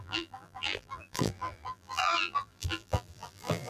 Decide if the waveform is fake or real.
fake